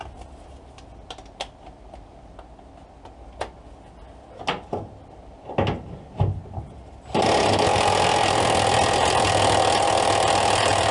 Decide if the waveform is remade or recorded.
recorded